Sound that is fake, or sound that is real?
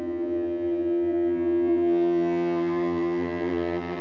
fake